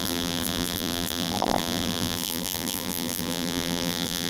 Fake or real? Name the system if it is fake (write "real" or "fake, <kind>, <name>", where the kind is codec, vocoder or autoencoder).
fake, vocoder, BigVGAN v2